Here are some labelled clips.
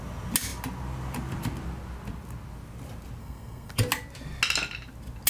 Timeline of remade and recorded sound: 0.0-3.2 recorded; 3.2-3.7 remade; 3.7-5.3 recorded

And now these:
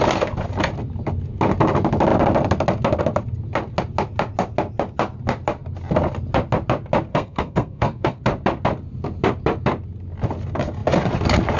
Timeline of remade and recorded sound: 0.0-7.1 recorded; 7.1-8.2 remade; 8.2-11.6 recorded

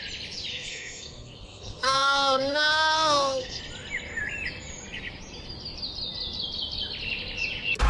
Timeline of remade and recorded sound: 0.0-0.5 recorded; 0.5-3.6 remade; 3.6-7.9 recorded

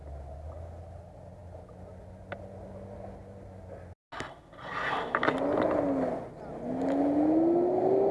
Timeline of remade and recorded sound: 0.0-8.1 recorded

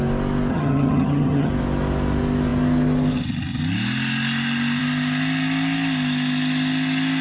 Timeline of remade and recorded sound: 0.0-0.5 recorded; 0.5-1.5 remade; 1.5-7.2 recorded

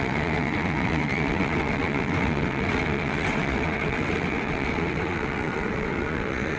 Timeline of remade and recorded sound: 0.0-6.6 remade

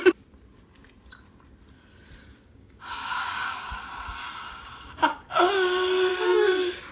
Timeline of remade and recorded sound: 0.0-2.3 recorded; 2.3-5.4 remade; 5.4-6.1 recorded; 6.1-6.9 remade